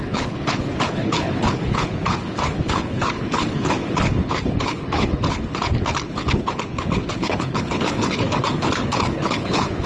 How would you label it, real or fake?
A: fake